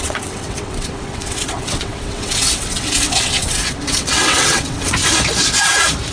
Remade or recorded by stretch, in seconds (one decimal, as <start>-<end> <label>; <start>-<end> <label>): 0.0-5.0 remade; 5.0-6.1 recorded